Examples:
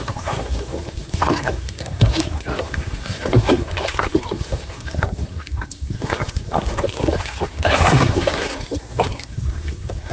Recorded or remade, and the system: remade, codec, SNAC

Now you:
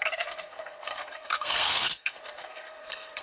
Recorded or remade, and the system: remade, codec, SNAC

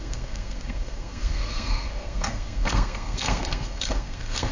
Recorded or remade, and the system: remade, codec, SNAC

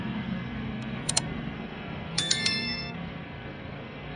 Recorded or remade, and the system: remade, codec, SNAC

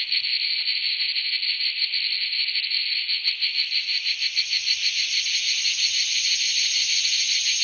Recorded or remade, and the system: recorded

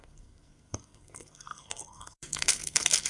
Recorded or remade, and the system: remade, codec, SNAC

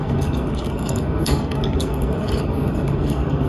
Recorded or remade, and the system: remade, codec, SNAC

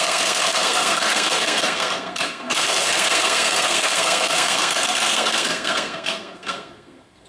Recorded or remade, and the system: remade, codec, SNAC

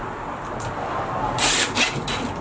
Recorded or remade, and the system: recorded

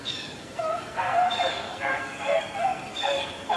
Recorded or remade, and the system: remade, codec, SNAC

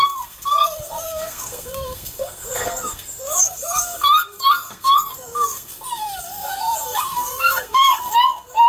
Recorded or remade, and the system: remade, codec, SNAC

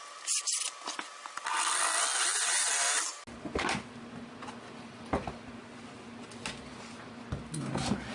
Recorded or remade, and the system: recorded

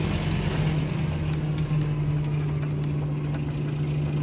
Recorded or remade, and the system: recorded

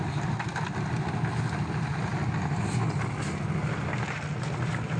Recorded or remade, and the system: recorded